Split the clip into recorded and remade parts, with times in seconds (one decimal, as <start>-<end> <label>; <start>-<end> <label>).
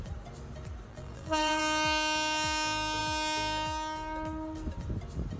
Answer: 0.0-0.9 recorded; 0.9-1.6 remade; 1.6-5.4 recorded